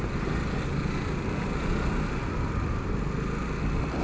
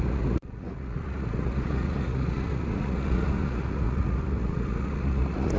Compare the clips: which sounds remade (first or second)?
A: second